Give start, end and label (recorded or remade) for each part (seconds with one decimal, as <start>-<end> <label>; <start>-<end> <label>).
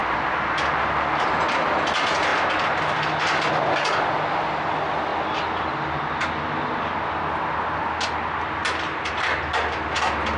0.0-10.4 recorded